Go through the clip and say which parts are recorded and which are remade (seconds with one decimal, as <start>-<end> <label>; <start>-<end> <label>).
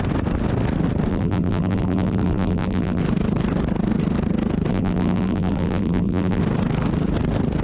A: 0.0-1.1 recorded; 1.1-3.0 remade; 3.0-4.7 recorded; 4.7-6.4 remade; 6.4-7.6 recorded